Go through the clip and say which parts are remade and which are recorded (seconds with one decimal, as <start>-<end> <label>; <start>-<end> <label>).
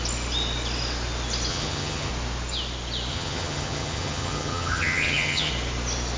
0.0-1.5 recorded; 1.5-2.1 remade; 2.1-3.1 recorded; 3.1-5.5 remade; 5.5-6.2 recorded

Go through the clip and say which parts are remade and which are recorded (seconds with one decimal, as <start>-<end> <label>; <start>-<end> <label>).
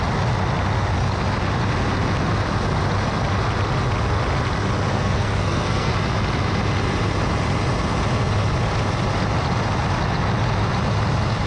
0.0-4.9 recorded; 4.9-5.9 remade; 5.9-11.5 recorded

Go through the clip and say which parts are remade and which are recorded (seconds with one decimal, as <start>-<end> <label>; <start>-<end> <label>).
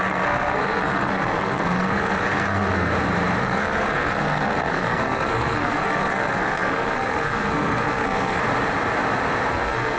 0.0-2.9 remade; 2.9-3.4 recorded; 3.4-8.4 remade; 8.4-9.5 recorded; 9.5-10.0 remade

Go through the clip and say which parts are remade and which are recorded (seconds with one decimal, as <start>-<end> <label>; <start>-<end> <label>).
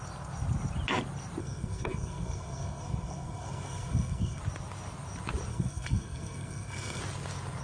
0.0-1.4 recorded; 1.4-4.4 remade; 4.4-5.5 recorded; 5.5-7.0 remade; 7.0-7.6 recorded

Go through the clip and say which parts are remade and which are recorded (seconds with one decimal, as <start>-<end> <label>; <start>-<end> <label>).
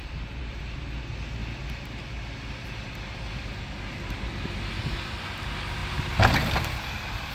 0.0-0.6 remade; 0.6-7.3 recorded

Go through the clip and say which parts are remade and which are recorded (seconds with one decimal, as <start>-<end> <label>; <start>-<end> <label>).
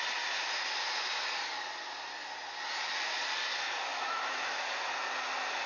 0.0-3.9 recorded; 3.9-4.6 remade; 4.6-5.7 recorded